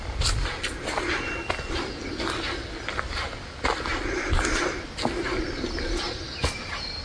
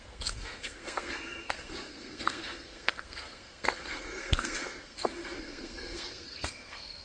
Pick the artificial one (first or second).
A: second